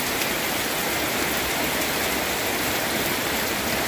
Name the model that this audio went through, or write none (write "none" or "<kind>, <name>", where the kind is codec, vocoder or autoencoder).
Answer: none